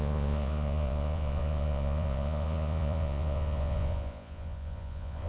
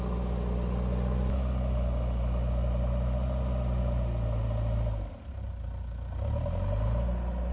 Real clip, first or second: second